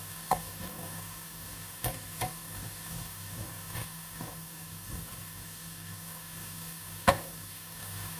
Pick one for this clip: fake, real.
fake